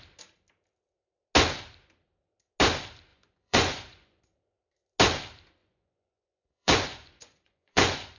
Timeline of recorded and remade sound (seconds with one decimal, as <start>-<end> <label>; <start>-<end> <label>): 0.0-3.1 recorded; 3.1-4.2 remade; 4.2-5.6 recorded; 5.6-8.2 remade